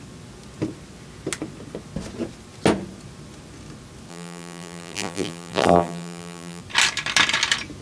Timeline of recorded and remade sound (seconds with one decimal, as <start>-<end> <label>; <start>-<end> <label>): 0.0-4.1 recorded; 4.1-6.6 remade; 6.6-7.8 recorded